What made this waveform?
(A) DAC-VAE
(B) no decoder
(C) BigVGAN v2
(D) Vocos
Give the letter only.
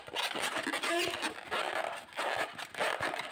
B